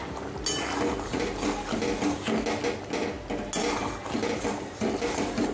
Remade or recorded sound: recorded